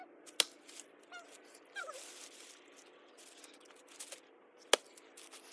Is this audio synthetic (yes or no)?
no